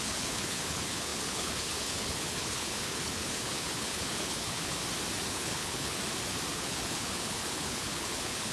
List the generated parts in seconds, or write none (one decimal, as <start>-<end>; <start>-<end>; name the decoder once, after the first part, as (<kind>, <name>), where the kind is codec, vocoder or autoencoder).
0.0-4.8 (codec, HILCodec); 5.3-6.0; 6.5-8.5